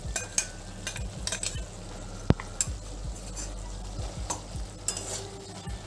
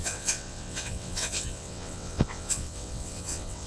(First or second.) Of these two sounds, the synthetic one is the second